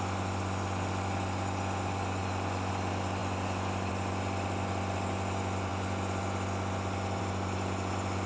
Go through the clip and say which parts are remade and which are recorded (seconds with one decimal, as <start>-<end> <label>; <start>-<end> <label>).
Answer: 0.0-8.3 recorded